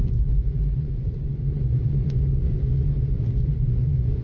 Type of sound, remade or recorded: remade